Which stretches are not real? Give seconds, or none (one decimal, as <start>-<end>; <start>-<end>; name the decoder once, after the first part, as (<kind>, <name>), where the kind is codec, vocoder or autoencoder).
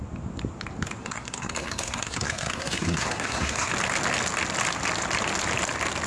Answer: 1.0-3.7 (codec, SNAC)